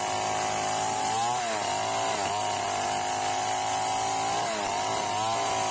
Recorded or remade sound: recorded